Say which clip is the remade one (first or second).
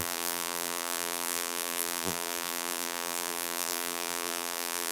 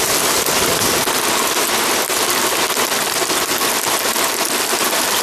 first